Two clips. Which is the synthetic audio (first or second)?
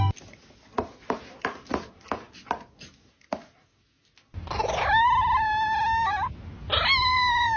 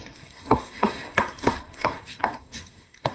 second